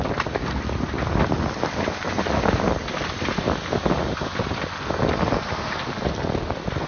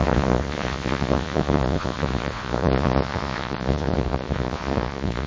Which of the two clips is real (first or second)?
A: first